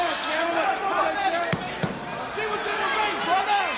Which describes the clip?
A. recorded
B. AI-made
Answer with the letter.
A